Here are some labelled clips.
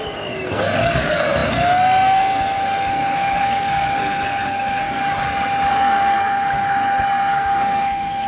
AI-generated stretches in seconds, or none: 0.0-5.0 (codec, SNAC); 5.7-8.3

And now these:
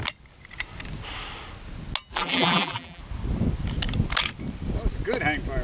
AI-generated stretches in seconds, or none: 2.1-3.0 (vocoder, BigVGAN v2)

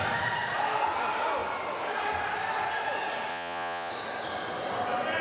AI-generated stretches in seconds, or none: 3.3-3.9 (vocoder, Vocos)

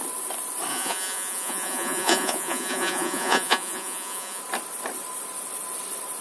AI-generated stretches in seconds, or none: 0.7-4.4 (vocoder, Vocos)